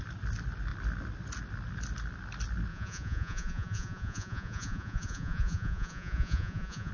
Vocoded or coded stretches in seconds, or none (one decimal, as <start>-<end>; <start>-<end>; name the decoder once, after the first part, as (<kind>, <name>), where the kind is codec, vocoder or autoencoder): 2.7-6.9 (vocoder, Vocos)